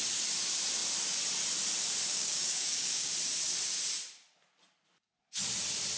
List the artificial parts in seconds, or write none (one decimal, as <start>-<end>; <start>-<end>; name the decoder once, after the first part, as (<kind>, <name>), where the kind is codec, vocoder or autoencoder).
2.1-3.1 (codec, DAC)